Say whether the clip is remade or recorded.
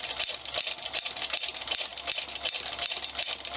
recorded